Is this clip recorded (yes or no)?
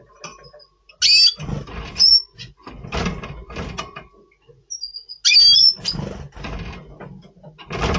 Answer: yes